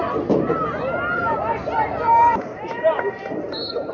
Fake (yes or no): yes